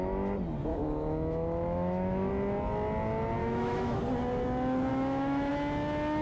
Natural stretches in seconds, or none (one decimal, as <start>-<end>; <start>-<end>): 0.0-0.7; 2.3-3.4; 4.0-4.9; 5.5-6.2